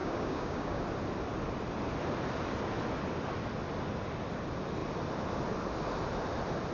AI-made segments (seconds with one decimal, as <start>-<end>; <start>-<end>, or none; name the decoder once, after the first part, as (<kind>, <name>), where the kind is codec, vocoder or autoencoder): 0.0-0.8 (codec, DAC)